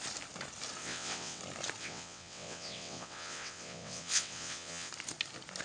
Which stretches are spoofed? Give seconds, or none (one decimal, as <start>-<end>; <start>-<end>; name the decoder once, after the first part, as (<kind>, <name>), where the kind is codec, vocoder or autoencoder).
0.8-1.4 (vocoder, WaveNeXt); 1.8-4.9